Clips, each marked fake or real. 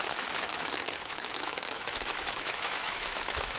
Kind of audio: fake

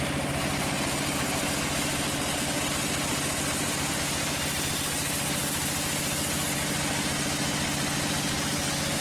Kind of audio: real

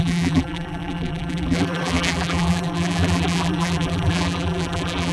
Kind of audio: fake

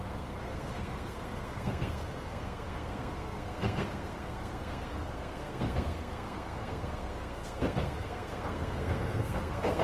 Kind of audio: fake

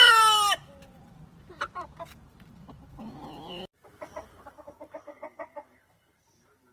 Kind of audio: fake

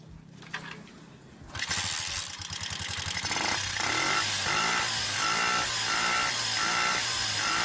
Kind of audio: real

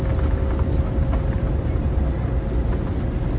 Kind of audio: real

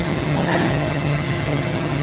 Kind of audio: fake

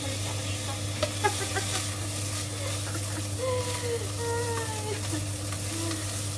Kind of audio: real